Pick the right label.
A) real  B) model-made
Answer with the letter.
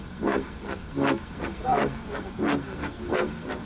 B